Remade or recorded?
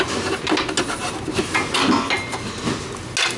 recorded